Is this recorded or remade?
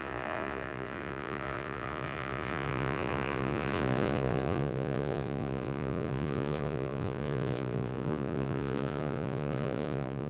remade